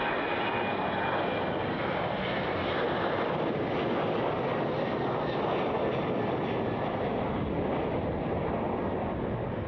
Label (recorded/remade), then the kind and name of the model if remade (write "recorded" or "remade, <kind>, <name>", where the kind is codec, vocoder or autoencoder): recorded